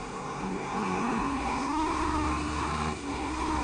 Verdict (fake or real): fake